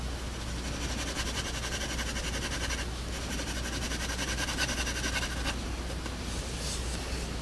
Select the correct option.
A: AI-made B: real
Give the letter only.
B